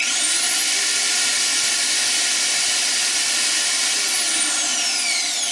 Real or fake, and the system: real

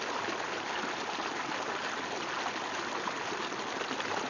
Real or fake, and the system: real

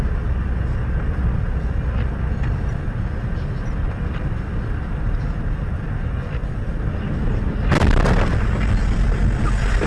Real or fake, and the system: real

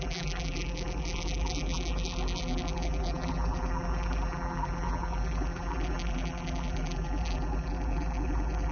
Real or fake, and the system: fake, vocoder, BigVGAN v2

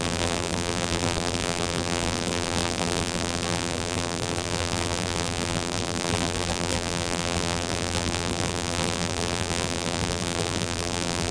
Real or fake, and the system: fake, vocoder, BigVGAN v2